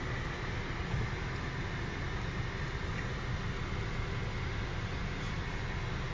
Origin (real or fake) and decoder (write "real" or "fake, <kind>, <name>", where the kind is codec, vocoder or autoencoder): real